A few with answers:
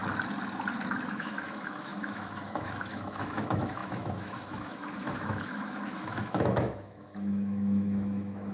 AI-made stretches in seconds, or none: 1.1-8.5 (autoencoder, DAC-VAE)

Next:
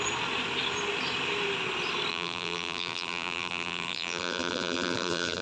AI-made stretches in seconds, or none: 2.1-5.4 (vocoder, BigVGAN v2)